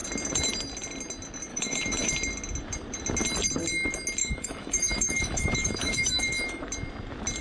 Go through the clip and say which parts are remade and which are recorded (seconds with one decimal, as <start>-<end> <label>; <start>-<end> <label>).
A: 0.0-1.5 recorded; 1.5-2.1 remade; 2.1-4.2 recorded; 4.2-6.6 remade; 6.6-7.4 recorded

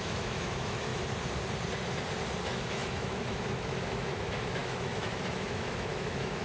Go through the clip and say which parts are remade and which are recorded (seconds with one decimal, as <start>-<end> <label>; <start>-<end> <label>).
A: 0.0-0.9 remade; 0.9-2.4 recorded; 2.4-6.4 remade